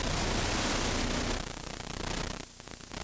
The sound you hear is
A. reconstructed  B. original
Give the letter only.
B